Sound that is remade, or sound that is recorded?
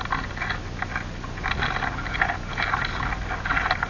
recorded